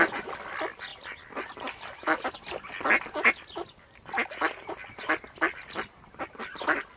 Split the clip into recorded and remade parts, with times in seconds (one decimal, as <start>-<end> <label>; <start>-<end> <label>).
0.0-7.0 recorded